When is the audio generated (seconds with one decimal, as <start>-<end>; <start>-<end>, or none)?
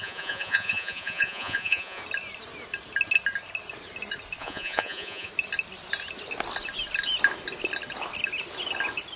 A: 0.0-2.0; 4.4-5.3